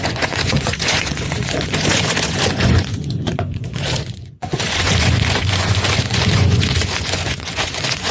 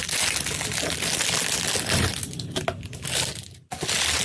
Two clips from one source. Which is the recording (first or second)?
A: second